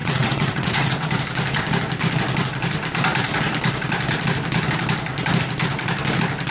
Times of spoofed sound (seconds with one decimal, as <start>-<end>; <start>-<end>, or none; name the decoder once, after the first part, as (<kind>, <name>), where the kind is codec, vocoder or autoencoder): 0.0-1.1 (vocoder, WaveNeXt)